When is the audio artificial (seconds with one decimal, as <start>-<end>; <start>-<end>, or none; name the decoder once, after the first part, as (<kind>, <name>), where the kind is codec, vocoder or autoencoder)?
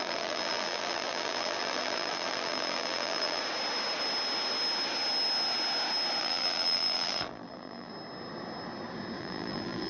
0.0-3.4 (vocoder, BigVGAN v2); 6.2-7.9; 9.2-9.9